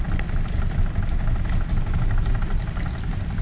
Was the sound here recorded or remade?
recorded